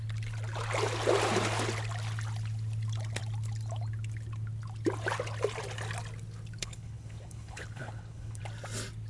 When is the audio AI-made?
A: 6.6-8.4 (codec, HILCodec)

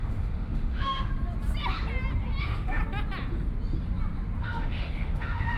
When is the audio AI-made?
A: 0.0-1.1 (autoencoder, DAC-VAE); 2.4-2.8; 4.4-5.6

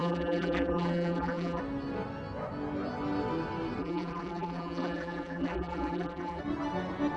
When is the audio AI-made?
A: 0.0-1.6 (vocoder, BigVGAN v2); 3.8-6.4

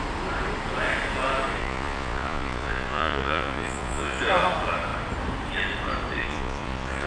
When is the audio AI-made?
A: 1.6-4.2 (vocoder, Vocos); 6.2-7.1

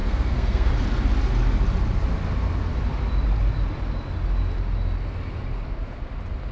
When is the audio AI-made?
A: 0.0-0.7 (codec, SNAC)

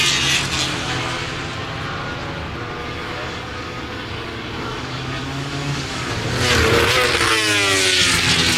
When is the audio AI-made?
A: 2.8-6.1 (codec, DAC)